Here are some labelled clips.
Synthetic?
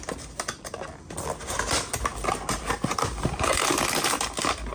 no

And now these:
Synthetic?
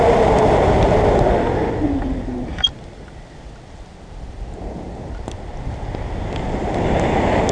no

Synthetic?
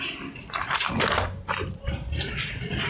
no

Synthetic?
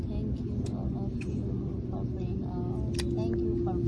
no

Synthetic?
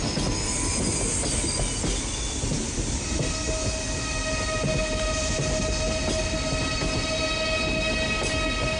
no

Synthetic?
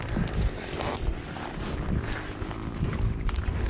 no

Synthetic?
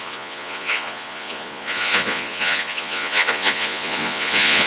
yes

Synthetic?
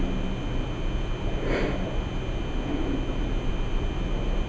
no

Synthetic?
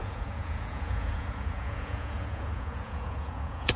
yes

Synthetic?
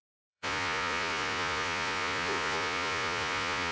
yes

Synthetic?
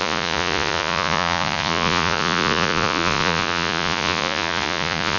yes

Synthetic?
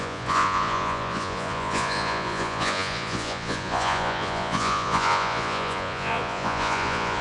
yes